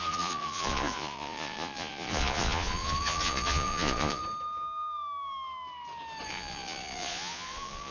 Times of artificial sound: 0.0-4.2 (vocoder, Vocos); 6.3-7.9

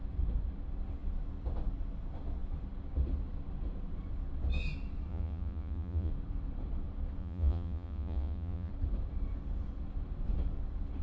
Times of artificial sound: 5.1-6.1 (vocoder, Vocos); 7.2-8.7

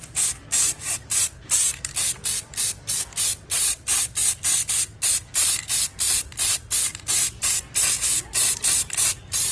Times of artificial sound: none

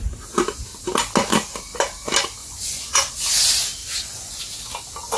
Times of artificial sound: 2.4-3.1 (vocoder, Vocos); 3.8-4.4